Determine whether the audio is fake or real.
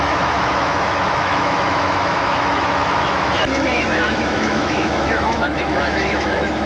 fake